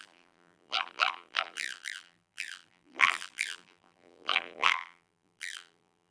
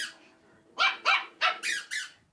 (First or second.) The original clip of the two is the second